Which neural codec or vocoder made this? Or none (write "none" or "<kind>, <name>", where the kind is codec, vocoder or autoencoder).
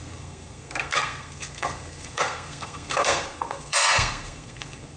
codec, SNAC